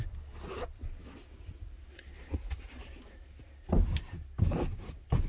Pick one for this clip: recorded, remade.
recorded